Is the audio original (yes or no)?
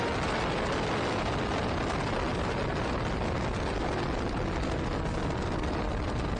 yes